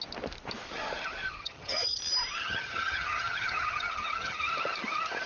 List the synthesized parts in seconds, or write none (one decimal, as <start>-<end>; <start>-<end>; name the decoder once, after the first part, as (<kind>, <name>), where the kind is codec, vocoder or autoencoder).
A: 1.4-2.0 (vocoder, HiFi-GAN); 2.4-4.5